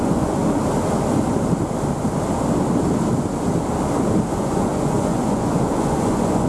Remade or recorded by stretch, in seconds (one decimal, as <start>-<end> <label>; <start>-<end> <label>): 0.0-0.4 remade; 0.4-4.3 recorded; 4.3-6.5 remade